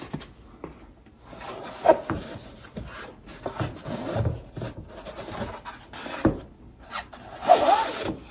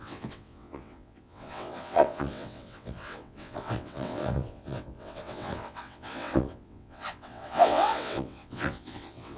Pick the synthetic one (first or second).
second